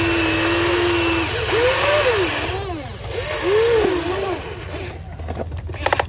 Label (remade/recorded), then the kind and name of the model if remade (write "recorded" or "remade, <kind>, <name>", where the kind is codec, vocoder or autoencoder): recorded